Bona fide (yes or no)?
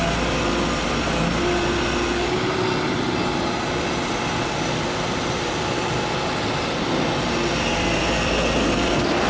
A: yes